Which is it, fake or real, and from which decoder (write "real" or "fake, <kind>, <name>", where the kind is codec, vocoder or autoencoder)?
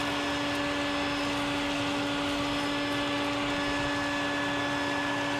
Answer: real